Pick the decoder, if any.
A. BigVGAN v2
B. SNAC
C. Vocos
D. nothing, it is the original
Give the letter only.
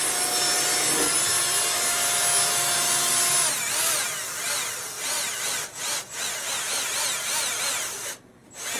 D